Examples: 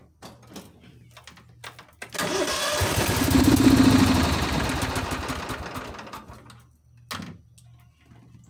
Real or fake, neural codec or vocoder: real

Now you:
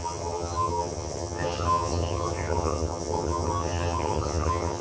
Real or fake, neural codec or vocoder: fake, vocoder, HiFi-GAN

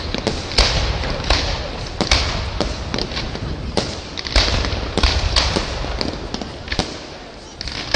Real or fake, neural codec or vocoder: real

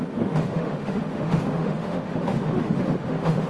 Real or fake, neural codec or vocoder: fake, autoencoder, DAC-VAE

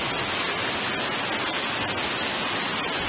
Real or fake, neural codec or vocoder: real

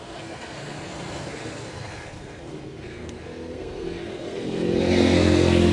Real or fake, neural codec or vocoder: fake, codec, SNAC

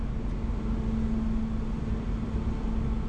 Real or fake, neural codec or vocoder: real